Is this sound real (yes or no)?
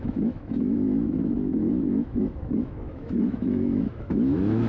no